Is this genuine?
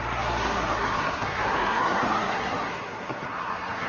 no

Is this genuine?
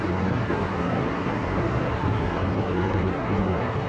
no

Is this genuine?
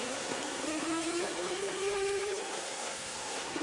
no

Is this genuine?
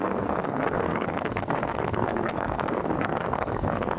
no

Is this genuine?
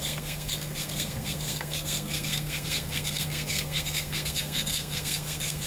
no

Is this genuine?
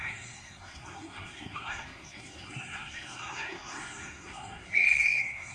no